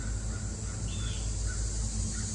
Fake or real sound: real